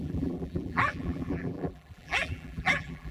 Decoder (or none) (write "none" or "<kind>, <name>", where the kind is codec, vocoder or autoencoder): vocoder, BigVGAN v2